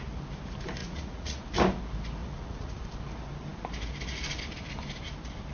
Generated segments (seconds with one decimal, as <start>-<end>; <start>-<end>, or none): 0.8-1.4; 2.2-2.8